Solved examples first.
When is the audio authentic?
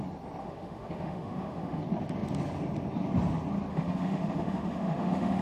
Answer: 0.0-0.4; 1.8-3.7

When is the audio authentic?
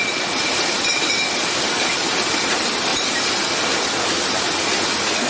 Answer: 0.0-5.3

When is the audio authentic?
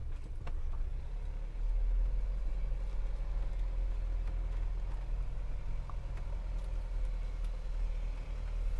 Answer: 0.0-8.8